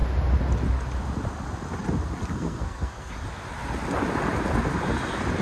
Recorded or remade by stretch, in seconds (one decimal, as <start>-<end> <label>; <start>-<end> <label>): 0.0-2.3 recorded; 2.3-3.1 remade; 3.1-5.4 recorded